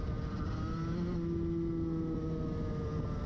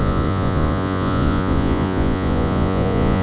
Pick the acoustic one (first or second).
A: first